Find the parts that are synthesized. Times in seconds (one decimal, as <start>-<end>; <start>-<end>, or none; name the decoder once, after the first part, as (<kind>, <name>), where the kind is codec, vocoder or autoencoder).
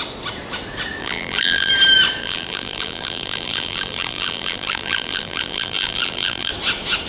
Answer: 1.0-1.7 (vocoder, BigVGAN v2); 2.2-6.5